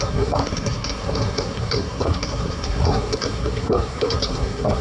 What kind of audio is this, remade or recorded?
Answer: remade